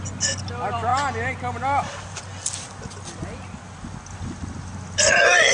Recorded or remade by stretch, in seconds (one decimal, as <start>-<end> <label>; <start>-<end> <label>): 0.0-5.5 recorded